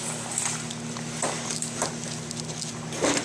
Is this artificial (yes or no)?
no